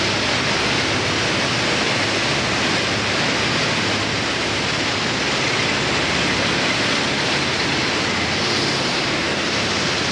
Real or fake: real